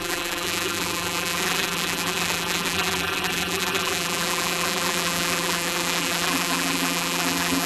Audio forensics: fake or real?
fake